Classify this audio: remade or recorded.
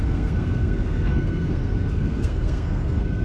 remade